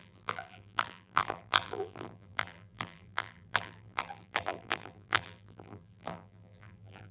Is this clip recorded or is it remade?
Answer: remade